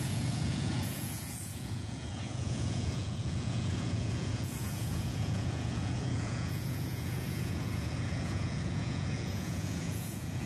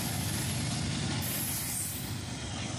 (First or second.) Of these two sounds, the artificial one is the first